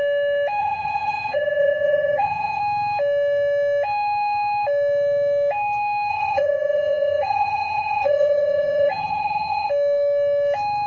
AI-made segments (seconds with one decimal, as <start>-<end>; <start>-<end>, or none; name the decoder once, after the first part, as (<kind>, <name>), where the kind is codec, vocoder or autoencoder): 0.6-2.6 (vocoder, HiFi-GAN); 6.1-9.7